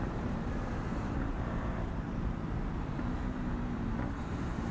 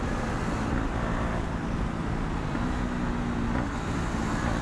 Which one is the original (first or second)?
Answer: second